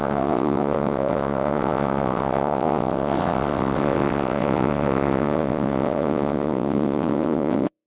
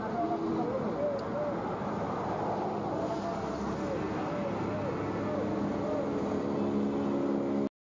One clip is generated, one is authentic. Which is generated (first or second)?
first